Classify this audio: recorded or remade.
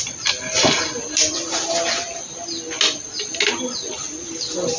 recorded